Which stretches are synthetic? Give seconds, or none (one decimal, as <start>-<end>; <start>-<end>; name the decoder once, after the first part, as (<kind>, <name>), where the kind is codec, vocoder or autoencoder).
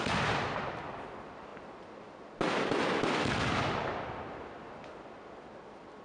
none